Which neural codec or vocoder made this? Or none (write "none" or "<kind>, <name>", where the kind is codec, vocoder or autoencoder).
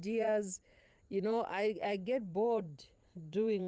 vocoder, Vocos